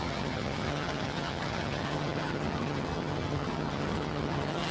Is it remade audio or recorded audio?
remade